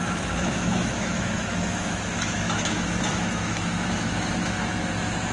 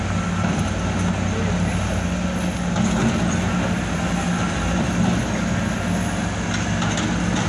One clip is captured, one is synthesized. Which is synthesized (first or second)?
first